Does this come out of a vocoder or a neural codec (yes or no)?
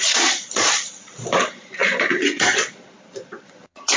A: yes